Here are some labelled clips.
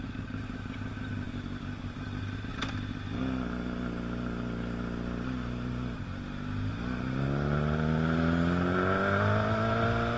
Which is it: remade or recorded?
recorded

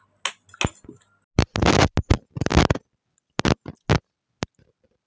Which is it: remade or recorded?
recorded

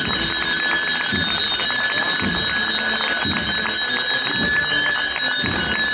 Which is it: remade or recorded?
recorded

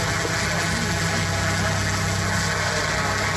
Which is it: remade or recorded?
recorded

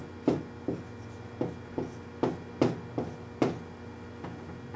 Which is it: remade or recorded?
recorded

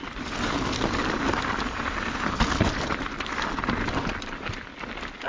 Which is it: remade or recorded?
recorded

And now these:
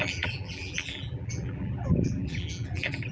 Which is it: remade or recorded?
remade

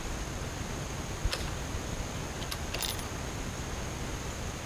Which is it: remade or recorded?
recorded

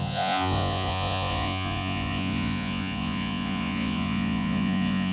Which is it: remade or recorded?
remade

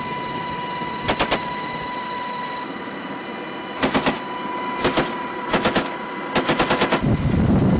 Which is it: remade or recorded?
recorded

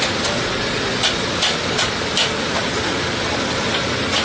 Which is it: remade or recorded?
recorded